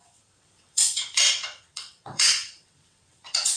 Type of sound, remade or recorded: remade